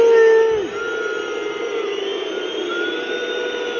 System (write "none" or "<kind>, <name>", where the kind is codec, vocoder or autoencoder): none